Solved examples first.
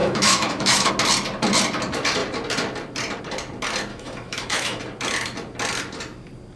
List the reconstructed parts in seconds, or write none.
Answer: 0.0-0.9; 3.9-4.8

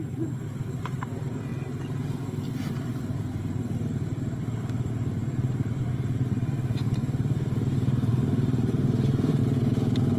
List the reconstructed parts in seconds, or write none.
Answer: 0.0-9.4